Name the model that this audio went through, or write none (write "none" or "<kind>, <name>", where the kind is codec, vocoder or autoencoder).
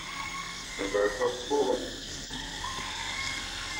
codec, SNAC